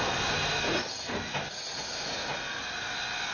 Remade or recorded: recorded